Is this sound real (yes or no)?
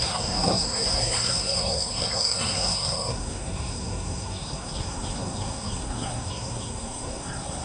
no